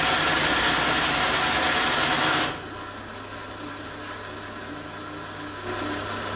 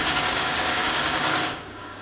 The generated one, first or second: second